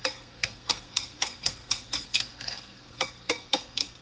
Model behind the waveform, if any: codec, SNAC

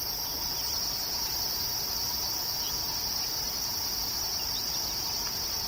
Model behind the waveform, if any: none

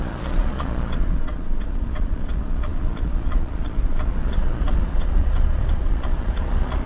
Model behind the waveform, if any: vocoder, Vocos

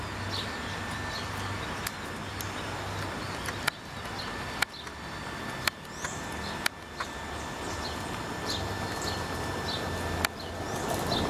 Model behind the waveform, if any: none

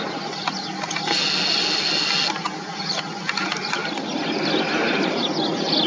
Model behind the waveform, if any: none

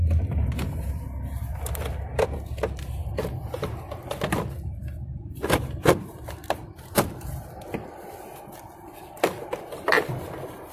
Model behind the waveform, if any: vocoder, BigVGAN v2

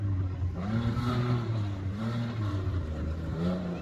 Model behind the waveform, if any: vocoder, BigVGAN v2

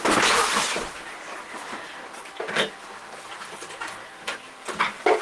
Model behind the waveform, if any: none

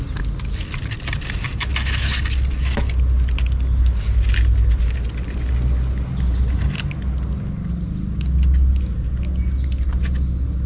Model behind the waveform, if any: none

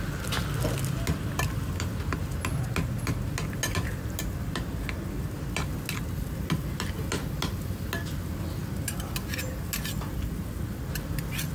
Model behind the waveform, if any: none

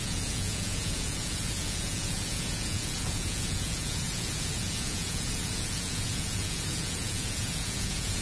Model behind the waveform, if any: vocoder, Vocos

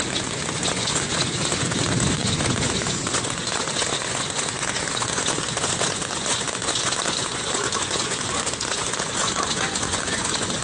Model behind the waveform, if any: vocoder, Vocos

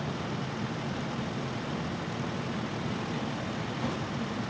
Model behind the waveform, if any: none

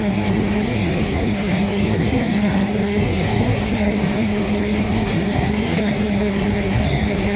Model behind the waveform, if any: codec, SNAC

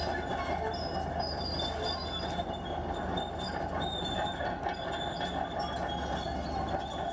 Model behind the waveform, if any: none